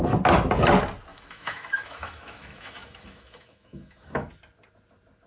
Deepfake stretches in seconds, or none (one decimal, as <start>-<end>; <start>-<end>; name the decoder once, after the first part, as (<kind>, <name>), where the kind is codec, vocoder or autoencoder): 1.1-4.3 (autoencoder, DAC-VAE)

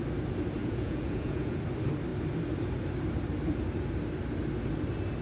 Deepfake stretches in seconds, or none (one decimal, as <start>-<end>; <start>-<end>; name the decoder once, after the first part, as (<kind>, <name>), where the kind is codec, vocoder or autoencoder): 0.6-1.6 (vocoder, Vocos)